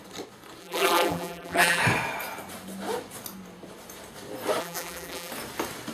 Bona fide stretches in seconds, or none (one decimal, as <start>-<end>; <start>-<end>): 0.0-0.6; 1.8-4.6; 5.3-5.9